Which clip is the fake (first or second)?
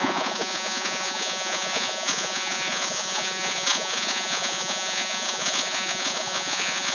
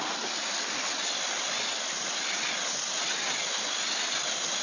first